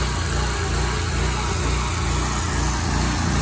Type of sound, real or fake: real